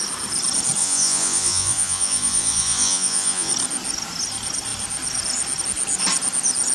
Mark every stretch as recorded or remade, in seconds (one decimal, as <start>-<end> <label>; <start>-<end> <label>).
0.0-0.8 recorded; 0.8-3.5 remade; 3.5-6.7 recorded